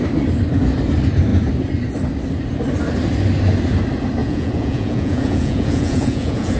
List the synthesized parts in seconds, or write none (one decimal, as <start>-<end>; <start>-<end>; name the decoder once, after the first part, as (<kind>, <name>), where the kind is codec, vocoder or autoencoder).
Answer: 4.2-6.6 (vocoder, Vocos)